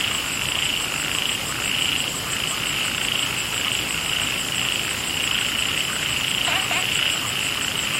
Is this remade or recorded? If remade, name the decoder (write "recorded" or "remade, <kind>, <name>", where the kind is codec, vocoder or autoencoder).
recorded